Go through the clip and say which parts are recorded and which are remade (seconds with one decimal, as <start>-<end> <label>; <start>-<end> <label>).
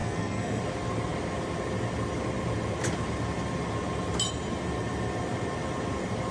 0.0-0.6 remade; 0.6-6.3 recorded